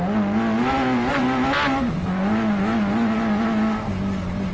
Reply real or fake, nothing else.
real